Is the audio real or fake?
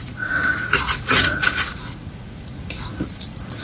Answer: fake